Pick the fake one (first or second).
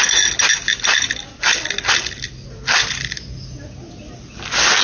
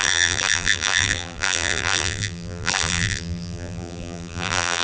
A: second